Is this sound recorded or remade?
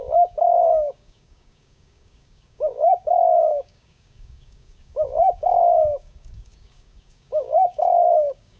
remade